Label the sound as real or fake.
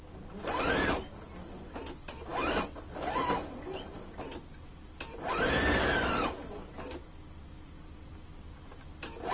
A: real